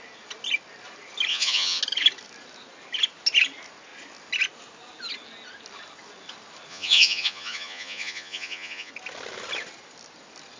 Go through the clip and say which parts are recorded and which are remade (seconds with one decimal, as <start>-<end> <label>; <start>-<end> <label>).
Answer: 0.0-1.3 recorded; 1.3-1.8 remade; 1.8-6.7 recorded; 6.7-8.9 remade; 8.9-10.6 recorded